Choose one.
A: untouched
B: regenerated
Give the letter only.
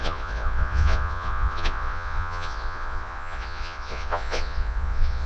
B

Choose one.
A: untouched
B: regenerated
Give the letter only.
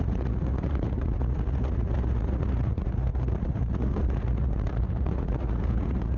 B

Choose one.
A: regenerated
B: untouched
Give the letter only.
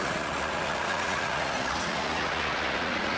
A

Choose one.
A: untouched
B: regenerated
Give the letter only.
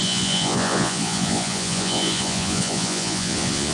B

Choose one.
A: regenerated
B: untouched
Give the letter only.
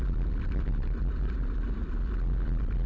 B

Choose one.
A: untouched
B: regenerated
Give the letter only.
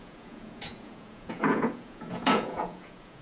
B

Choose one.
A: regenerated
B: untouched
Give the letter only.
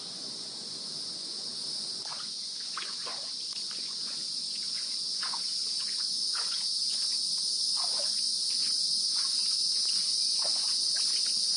A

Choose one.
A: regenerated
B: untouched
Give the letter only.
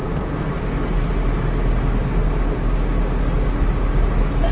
B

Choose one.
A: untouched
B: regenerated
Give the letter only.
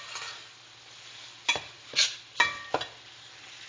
A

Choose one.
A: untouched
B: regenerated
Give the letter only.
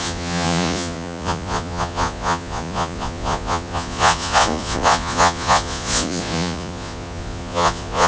B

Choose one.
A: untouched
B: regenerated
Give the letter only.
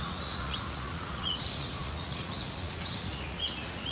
B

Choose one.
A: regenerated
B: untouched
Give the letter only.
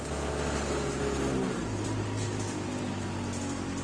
B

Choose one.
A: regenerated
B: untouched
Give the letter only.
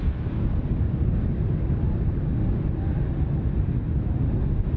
B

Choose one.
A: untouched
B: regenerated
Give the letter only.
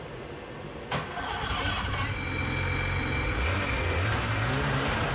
A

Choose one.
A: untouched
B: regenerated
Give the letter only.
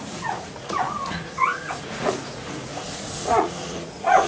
B